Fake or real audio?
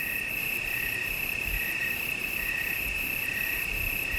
real